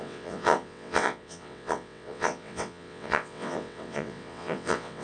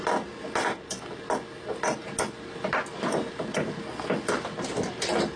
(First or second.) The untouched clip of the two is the second